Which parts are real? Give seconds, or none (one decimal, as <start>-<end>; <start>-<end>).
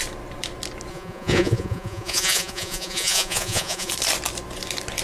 0.0-0.9; 3.9-5.0